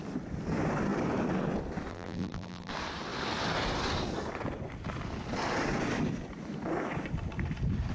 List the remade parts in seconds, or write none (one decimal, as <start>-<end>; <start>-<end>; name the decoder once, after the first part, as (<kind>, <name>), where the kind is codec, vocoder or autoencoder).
1.9-2.7 (vocoder, BigVGAN v2)